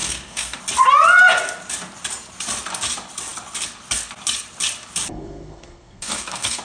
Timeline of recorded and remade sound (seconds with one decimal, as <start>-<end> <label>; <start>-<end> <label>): 0.0-0.6 remade; 0.6-5.1 recorded; 5.1-6.6 remade